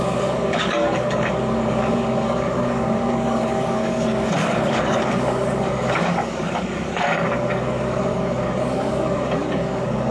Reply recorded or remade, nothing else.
remade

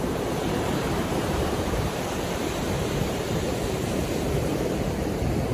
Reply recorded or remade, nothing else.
remade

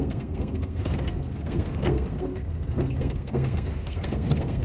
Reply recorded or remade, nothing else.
remade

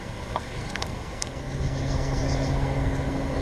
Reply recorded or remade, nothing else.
remade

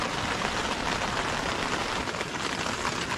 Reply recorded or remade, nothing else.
recorded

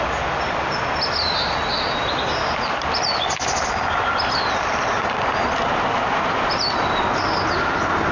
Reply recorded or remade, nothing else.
recorded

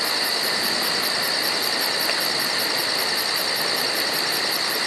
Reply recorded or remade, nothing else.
recorded